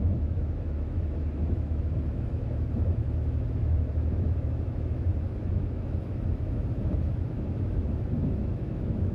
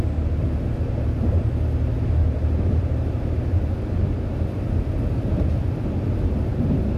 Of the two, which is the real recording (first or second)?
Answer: second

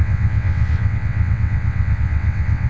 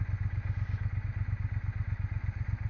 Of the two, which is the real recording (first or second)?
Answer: second